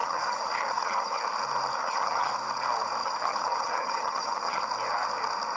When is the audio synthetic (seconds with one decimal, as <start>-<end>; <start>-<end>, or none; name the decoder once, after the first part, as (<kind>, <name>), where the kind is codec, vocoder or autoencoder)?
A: 0.0-1.2 (vocoder, HiFi-GAN); 1.8-2.3; 3.0-4.6